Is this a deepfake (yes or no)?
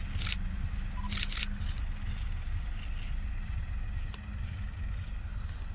no